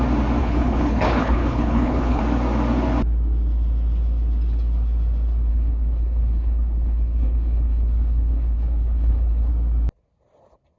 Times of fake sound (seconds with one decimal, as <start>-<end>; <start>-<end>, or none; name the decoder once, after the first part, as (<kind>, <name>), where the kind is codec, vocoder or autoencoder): 0.4-2.2 (codec, HILCodec); 5.5-9.5